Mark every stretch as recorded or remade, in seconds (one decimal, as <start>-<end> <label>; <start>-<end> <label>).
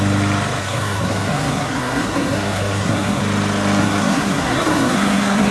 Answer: 0.0-0.6 recorded; 0.6-3.2 remade; 3.2-3.8 recorded; 3.8-5.5 remade